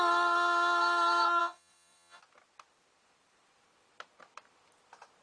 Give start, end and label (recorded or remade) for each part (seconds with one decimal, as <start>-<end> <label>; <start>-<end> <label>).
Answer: 0.0-1.4 recorded; 1.4-2.2 remade; 2.2-5.2 recorded